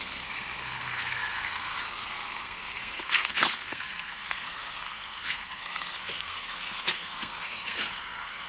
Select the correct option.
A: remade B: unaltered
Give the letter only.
A